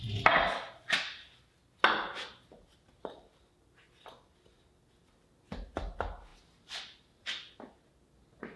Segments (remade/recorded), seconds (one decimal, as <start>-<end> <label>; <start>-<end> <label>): 0.0-8.6 recorded